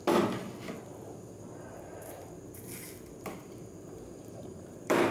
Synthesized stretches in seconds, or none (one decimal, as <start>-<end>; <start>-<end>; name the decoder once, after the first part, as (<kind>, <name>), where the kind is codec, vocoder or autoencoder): 3.4-5.1 (vocoder, BigVGAN v2)